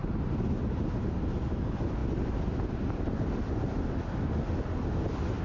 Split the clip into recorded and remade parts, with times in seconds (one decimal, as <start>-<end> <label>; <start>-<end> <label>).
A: 0.0-5.4 recorded